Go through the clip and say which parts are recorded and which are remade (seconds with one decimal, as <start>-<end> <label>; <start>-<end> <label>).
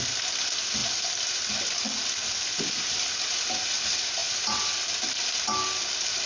0.0-6.3 recorded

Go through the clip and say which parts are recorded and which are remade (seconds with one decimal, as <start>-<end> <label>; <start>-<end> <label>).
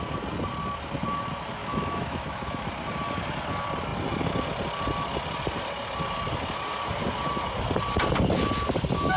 0.0-1.6 recorded; 1.6-2.7 remade; 2.7-9.2 recorded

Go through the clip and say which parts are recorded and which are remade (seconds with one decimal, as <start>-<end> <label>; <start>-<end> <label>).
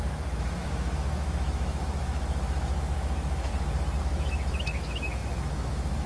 0.0-3.5 remade; 3.5-4.0 recorded; 4.0-6.1 remade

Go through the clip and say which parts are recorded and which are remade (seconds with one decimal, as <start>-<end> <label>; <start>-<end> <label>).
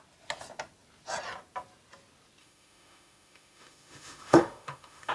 0.0-2.4 recorded; 2.4-5.1 remade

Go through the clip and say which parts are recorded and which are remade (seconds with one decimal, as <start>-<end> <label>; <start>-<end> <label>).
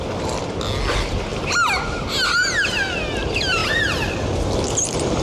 0.0-5.2 recorded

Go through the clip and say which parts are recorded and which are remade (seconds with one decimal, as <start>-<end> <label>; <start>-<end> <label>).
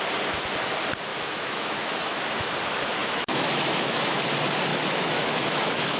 0.0-1.1 recorded; 1.1-2.5 remade; 2.5-3.0 recorded; 3.0-4.2 remade; 4.2-4.7 recorded; 4.7-6.0 remade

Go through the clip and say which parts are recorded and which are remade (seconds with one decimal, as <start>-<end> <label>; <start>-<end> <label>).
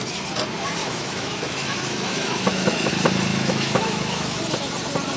0.0-0.8 recorded; 0.8-2.9 remade; 2.9-3.3 recorded; 3.3-4.4 remade; 4.4-5.2 recorded